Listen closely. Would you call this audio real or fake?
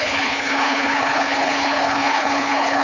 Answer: fake